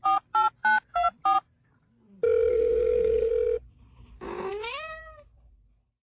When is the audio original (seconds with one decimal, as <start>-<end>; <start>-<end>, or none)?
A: 0.0-2.5; 3.3-6.1